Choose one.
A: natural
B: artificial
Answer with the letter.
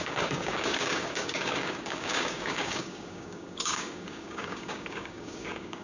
B